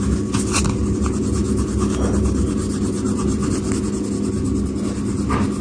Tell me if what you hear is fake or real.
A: real